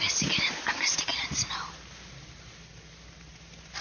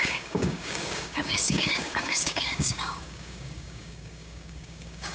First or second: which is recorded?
first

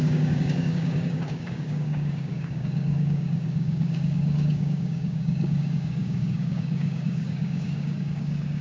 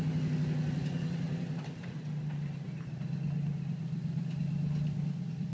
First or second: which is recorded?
second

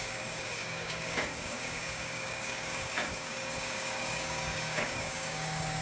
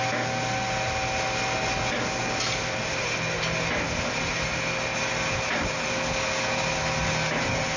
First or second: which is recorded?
second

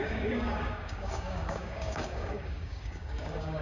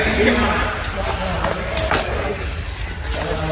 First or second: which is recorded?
second